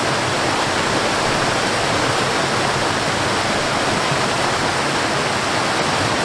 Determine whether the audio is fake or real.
real